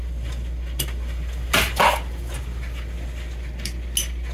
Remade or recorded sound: recorded